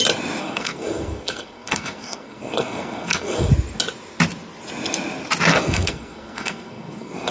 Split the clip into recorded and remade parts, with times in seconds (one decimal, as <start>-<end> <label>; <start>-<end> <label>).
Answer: 0.0-0.4 recorded; 0.4-3.5 remade; 3.5-5.5 recorded; 5.5-7.3 remade